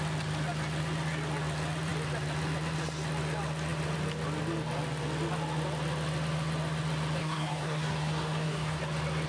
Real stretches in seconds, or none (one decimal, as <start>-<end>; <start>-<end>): 0.0-7.2; 8.8-9.3